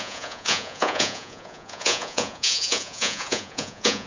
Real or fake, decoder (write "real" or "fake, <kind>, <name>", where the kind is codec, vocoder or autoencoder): fake, vocoder, Vocos